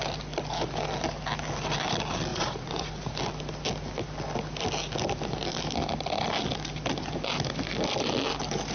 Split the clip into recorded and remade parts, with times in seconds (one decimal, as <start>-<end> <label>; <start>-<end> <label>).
0.0-2.3 recorded; 2.3-2.9 remade; 2.9-8.7 recorded